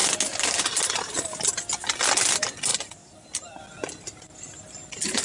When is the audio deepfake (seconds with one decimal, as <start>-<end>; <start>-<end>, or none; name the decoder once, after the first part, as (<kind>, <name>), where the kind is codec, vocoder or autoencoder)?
none